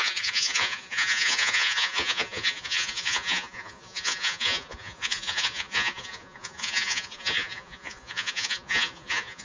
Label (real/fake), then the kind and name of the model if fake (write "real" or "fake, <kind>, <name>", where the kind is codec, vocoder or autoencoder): fake, vocoder, Vocos